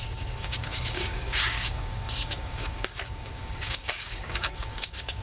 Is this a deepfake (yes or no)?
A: yes